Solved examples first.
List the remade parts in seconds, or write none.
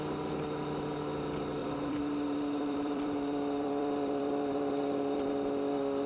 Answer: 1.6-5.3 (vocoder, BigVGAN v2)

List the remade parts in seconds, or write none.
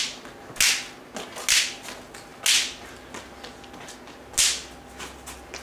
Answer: none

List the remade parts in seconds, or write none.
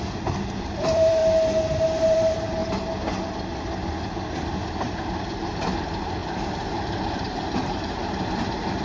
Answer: 0.0-1.2 (vocoder, BigVGAN v2); 1.8-2.6; 4.8-8.8